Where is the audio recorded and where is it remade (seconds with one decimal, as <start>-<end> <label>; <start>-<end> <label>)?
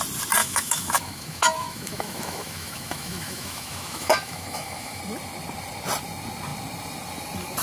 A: 0.0-0.4 recorded; 0.4-5.0 remade; 5.0-7.6 recorded